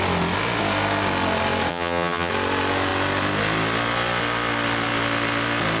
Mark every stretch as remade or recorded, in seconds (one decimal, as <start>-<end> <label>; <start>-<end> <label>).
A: 0.0-1.7 recorded; 1.7-2.3 remade; 2.3-5.8 recorded